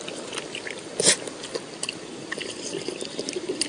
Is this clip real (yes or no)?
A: yes